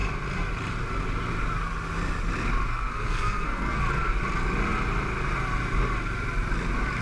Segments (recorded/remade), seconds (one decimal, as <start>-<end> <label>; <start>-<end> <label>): 0.0-2.7 recorded; 2.7-3.8 remade; 3.8-7.0 recorded